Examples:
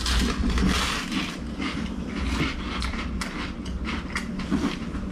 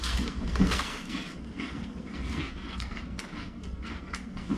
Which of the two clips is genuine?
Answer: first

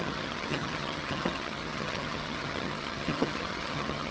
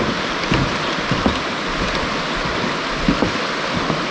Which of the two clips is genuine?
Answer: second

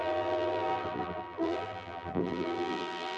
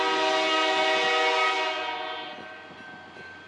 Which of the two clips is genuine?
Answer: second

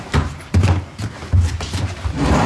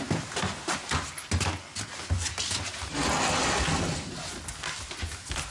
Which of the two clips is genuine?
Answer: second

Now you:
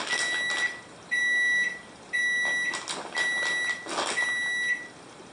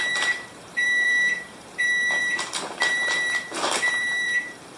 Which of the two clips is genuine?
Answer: first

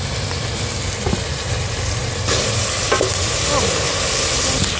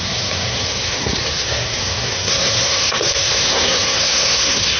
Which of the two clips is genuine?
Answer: first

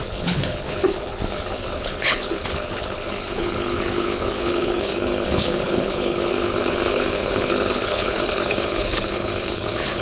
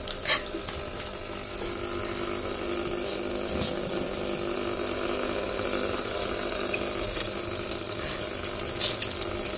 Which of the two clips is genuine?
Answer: second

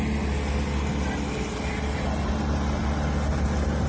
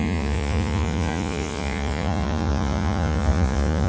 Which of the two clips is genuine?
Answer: first